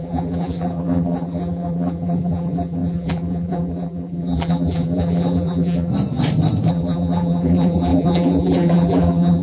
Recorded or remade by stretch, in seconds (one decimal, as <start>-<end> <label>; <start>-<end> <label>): 0.0-5.9 remade; 5.9-6.7 recorded; 6.7-9.4 remade